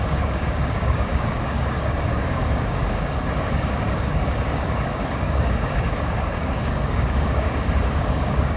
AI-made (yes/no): yes